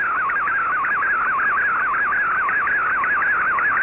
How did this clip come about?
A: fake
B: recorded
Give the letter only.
B